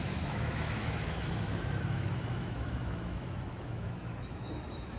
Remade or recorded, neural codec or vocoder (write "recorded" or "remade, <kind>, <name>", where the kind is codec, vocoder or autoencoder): remade, autoencoder, DAC-VAE